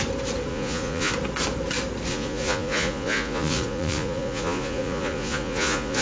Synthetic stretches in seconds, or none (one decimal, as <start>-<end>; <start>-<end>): 0.5-1.1; 2.1-6.0